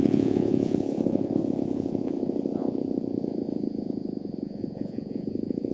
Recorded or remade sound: remade